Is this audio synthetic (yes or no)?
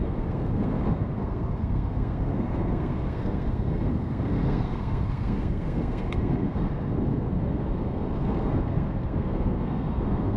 yes